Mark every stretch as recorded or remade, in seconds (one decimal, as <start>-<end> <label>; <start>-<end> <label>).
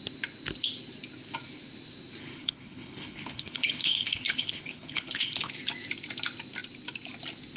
0.0-2.2 recorded; 2.2-5.5 remade; 5.5-7.6 recorded